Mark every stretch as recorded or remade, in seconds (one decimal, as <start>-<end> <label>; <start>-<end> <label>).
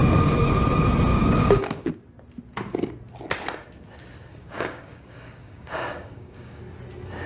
0.0-1.1 recorded; 1.1-2.0 remade; 2.0-4.3 recorded; 4.3-6.6 remade; 6.6-7.3 recorded